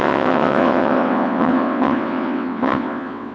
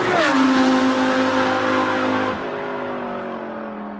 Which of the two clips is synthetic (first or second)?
first